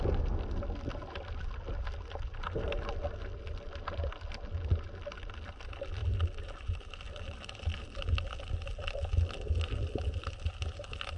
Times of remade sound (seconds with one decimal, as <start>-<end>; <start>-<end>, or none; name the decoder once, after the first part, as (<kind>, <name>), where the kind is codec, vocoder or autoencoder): none